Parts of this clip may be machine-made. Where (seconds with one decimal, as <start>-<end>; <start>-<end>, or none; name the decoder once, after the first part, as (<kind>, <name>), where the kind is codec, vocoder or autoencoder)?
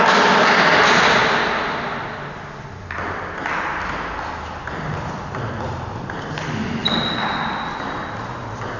none